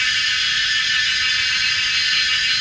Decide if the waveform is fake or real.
real